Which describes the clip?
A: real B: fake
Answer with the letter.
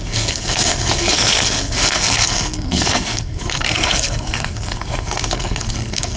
B